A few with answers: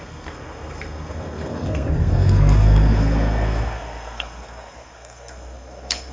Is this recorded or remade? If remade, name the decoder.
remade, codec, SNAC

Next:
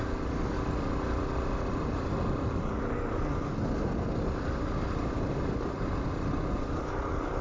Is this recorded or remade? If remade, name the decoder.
recorded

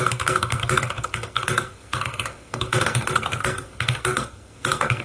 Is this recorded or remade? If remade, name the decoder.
remade, codec, SNAC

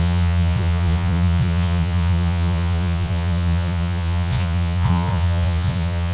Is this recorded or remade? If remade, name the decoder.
remade, vocoder, Vocos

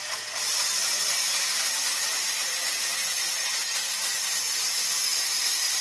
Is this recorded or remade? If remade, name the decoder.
recorded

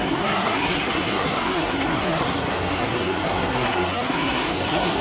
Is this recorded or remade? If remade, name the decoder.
remade, codec, SNAC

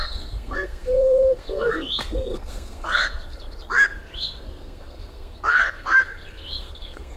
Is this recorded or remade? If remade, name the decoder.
remade, codec, SNAC